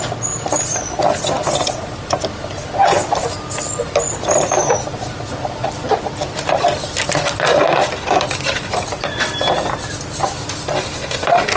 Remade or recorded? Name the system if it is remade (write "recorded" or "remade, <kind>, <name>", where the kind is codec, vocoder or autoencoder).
recorded